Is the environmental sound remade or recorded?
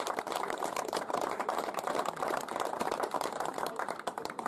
remade